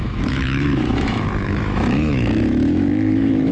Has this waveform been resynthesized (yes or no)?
yes